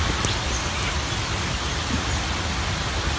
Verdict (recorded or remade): recorded